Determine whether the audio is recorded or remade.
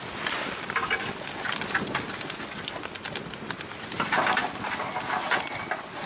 recorded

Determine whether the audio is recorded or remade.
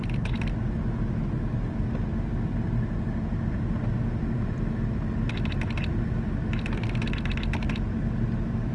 recorded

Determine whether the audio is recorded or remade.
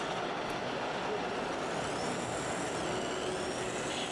recorded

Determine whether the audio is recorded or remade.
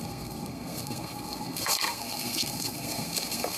remade